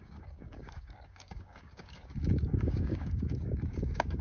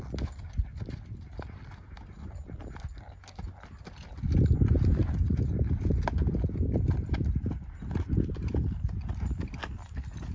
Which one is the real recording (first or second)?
second